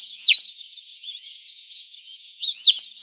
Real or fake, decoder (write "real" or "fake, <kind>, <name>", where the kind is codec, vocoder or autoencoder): fake, vocoder, Vocos